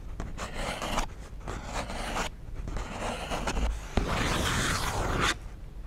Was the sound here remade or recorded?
recorded